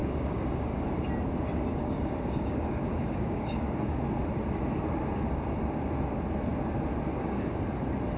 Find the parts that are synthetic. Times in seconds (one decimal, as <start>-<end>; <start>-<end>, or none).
0.0-0.9; 1.7-4.0; 5.2-5.7; 7.1-7.6